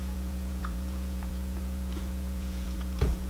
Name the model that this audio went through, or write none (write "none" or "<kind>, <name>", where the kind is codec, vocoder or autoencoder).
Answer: vocoder, Vocos